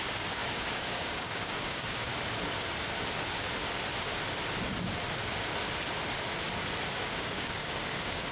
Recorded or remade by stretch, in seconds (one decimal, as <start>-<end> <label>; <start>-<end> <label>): 0.0-2.1 remade; 2.1-7.0 recorded; 7.0-8.3 remade